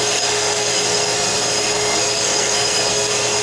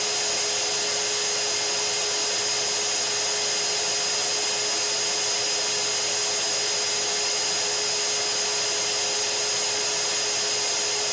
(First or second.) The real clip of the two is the second